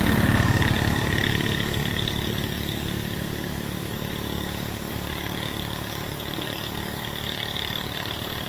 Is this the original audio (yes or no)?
no